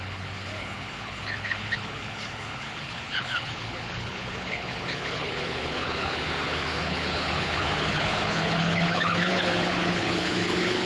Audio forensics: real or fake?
fake